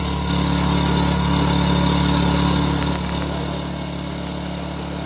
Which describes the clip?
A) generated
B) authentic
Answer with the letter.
B